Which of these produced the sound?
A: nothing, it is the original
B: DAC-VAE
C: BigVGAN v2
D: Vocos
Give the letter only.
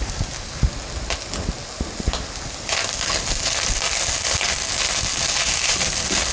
A